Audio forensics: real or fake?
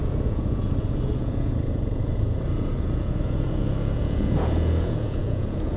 fake